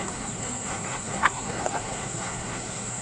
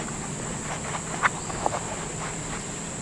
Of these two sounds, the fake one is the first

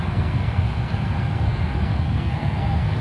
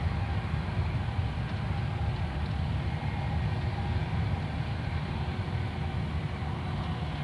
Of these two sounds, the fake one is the first